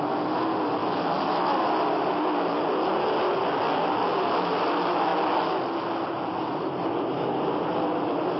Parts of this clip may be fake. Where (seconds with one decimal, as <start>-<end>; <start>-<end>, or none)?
none